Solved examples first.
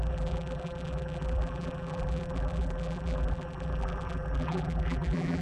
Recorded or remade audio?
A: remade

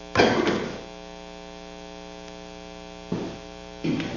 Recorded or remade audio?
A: recorded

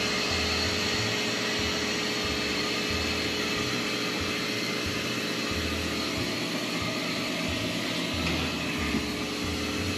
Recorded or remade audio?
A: recorded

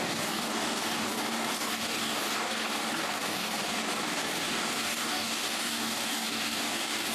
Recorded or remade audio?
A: remade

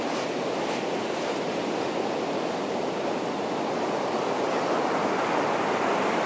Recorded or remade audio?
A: recorded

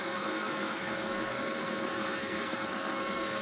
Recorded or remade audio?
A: remade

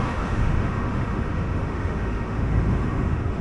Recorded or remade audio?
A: remade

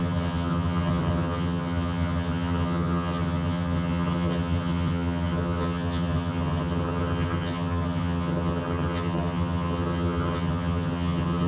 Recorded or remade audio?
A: remade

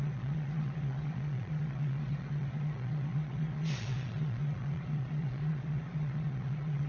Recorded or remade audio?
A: remade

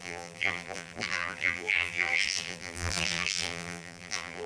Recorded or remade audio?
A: remade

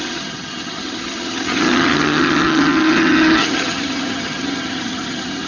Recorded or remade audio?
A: remade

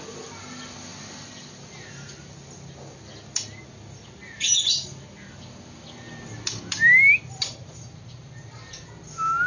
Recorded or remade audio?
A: recorded